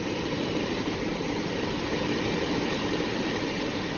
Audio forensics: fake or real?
fake